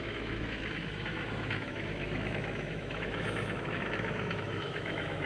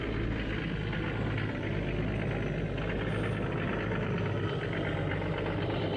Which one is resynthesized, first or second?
first